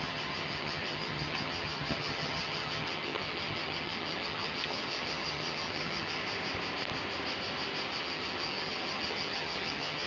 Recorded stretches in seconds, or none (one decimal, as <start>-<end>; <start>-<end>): 6.2-8.0